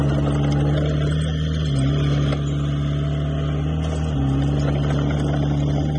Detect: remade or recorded recorded